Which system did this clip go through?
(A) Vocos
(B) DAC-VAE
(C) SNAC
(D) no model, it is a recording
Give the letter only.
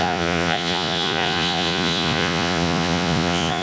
A